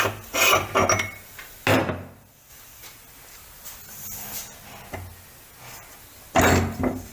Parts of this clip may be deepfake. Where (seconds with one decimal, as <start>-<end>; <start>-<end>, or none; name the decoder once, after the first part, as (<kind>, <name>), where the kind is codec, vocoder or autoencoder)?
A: none